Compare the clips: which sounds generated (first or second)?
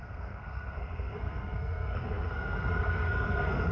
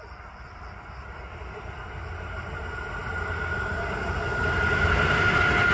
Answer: first